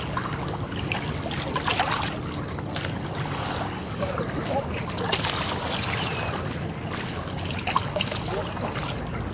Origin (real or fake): real